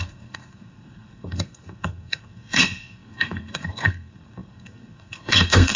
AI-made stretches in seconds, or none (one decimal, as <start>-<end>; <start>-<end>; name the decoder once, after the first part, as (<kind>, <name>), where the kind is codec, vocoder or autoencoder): 0.0-5.8 (codec, SNAC)